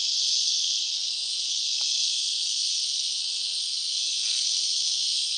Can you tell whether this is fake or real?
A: fake